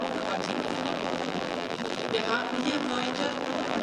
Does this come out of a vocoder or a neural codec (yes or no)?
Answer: yes